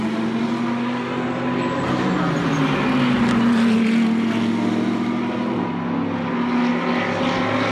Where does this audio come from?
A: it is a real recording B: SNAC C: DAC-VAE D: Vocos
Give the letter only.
A